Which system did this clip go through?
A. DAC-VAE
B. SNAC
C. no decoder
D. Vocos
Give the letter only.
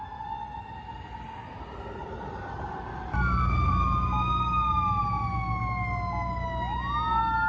C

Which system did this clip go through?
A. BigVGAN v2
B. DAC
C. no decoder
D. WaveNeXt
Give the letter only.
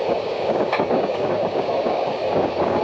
B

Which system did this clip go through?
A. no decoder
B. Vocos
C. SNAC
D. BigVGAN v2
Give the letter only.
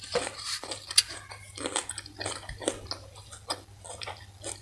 A